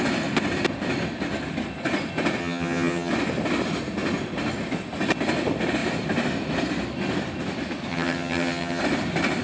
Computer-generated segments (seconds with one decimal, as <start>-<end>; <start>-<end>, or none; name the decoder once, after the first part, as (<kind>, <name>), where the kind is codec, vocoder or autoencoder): 2.4-3.1 (vocoder, HiFi-GAN); 7.9-8.8